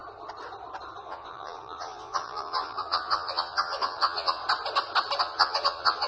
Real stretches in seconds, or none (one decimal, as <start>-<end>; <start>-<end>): 0.0-1.0; 4.4-5.2